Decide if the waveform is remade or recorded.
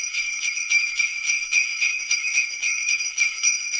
remade